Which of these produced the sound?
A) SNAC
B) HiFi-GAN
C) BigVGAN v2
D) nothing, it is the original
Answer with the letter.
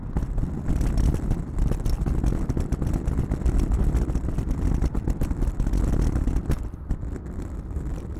C